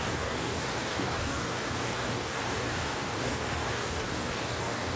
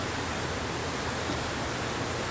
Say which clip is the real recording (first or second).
second